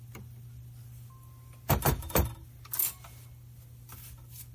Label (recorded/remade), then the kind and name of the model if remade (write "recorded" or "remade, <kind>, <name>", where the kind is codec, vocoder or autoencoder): recorded